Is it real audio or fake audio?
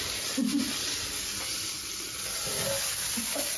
real